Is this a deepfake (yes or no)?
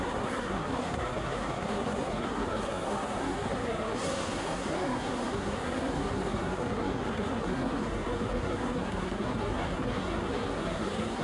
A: yes